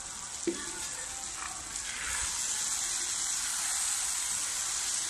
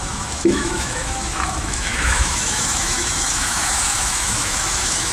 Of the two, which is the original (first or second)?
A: first